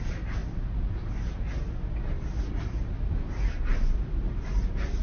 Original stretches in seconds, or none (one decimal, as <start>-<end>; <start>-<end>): 0.0-5.0